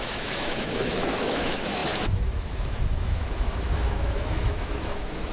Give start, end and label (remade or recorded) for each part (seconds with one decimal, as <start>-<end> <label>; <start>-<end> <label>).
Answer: 0.0-5.3 remade